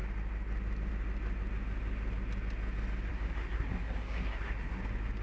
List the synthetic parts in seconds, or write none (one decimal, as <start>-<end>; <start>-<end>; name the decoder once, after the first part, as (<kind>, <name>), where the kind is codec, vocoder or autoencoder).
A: 3.1-4.8 (codec, SNAC)